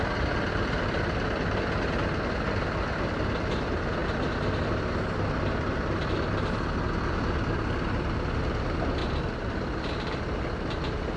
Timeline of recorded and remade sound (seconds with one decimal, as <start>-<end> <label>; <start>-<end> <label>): 0.0-11.2 recorded